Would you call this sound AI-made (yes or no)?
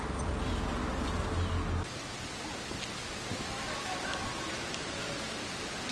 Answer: no